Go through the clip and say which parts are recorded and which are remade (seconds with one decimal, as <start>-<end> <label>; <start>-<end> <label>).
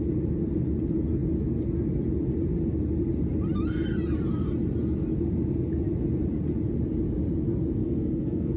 0.0-7.8 recorded; 7.8-8.6 remade